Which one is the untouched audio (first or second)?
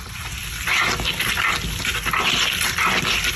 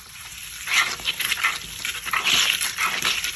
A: first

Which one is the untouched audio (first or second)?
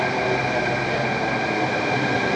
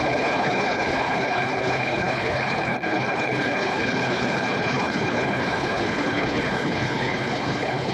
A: first